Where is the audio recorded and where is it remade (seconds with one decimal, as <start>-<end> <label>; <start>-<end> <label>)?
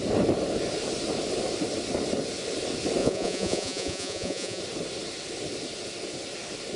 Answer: 0.0-3.0 recorded; 3.0-4.6 remade; 4.6-6.8 recorded